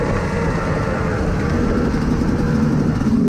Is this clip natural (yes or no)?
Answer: no